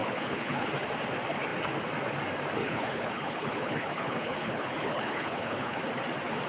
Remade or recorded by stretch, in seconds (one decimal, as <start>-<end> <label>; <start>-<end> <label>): 0.0-0.7 remade; 0.7-2.6 recorded; 2.6-5.8 remade; 5.8-6.5 recorded

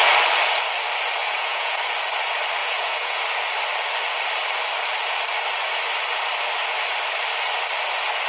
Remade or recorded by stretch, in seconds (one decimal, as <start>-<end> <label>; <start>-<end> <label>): 0.0-1.2 recorded; 1.2-1.8 remade; 1.8-2.6 recorded; 2.6-3.2 remade; 3.2-8.3 recorded

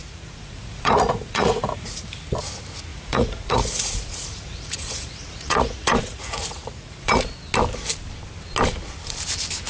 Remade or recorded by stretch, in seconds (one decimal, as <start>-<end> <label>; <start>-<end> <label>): 0.0-2.0 remade; 2.0-2.9 recorded; 2.9-7.3 remade; 7.3-9.7 recorded

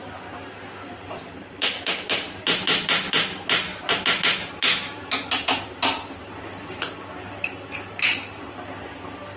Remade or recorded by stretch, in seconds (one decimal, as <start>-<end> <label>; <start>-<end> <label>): 0.0-9.4 recorded

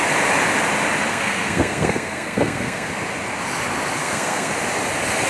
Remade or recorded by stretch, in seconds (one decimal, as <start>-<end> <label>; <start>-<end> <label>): 0.0-1.1 recorded; 1.1-2.9 remade; 2.9-4.0 recorded; 4.0-4.5 remade; 4.5-5.3 recorded